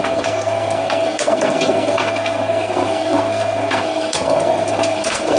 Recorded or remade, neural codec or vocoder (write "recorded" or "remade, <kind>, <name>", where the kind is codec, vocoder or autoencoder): remade, codec, SNAC